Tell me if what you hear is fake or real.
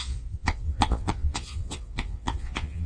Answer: fake